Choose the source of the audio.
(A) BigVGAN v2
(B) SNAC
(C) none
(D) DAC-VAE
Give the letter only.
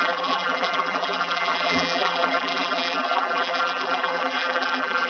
A